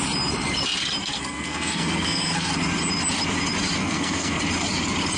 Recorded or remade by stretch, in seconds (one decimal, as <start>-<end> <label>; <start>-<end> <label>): 0.0-1.0 recorded; 1.0-2.5 remade; 2.5-3.8 recorded; 3.8-4.4 remade; 4.4-5.2 recorded

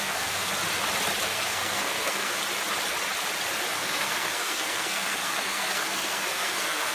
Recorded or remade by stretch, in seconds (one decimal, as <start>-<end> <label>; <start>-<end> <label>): 0.0-0.5 remade; 0.5-1.2 recorded; 1.2-2.4 remade; 2.4-3.7 recorded; 3.7-6.9 remade

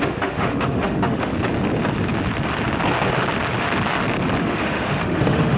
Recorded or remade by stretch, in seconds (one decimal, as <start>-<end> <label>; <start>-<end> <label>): 0.0-1.3 remade; 1.3-4.4 recorded; 4.4-5.6 remade

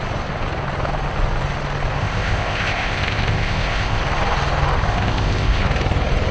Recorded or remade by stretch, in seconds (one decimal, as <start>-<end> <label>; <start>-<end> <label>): 0.0-2.0 recorded; 2.0-4.0 remade; 4.0-4.9 recorded; 4.9-5.6 remade; 5.6-6.3 recorded